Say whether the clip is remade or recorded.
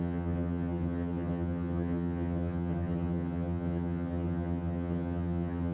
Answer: remade